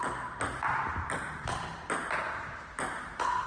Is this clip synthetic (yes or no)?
no